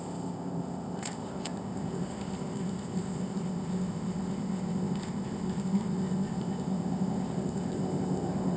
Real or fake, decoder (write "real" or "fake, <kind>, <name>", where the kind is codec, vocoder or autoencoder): fake, codec, ZipCodec